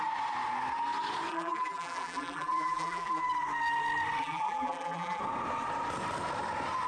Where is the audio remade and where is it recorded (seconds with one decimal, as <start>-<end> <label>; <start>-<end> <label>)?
0.0-1.3 recorded; 1.3-3.2 remade; 3.2-4.2 recorded; 4.2-5.2 remade; 5.2-6.9 recorded